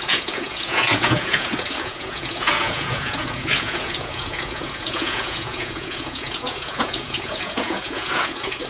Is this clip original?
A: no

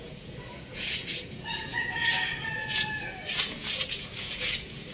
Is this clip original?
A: no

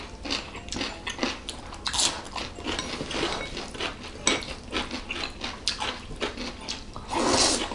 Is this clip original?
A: yes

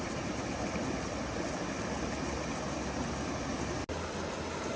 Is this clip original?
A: yes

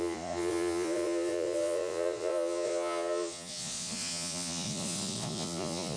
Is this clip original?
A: no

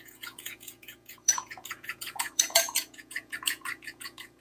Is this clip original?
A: no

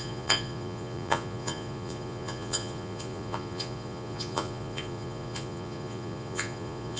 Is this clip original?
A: no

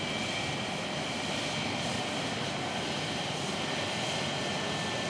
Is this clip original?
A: yes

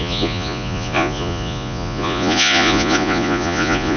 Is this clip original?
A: no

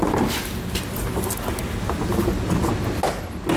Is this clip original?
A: yes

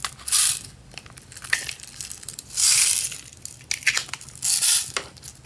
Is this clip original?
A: yes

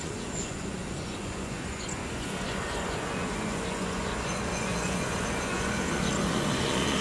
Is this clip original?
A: no